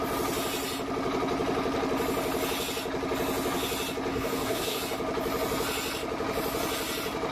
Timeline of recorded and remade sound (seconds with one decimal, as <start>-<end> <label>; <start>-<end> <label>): 0.0-4.1 recorded; 4.1-4.8 remade; 4.8-7.3 recorded